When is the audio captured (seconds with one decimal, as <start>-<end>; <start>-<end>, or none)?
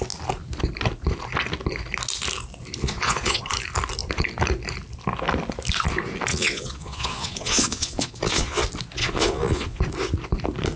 0.0-2.8; 3.4-6.3; 8.6-9.0; 9.8-10.8